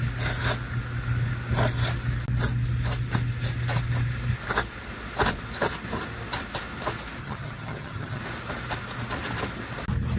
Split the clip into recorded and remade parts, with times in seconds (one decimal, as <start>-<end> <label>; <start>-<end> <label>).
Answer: 0.0-7.2 recorded; 7.2-8.2 remade; 8.2-10.2 recorded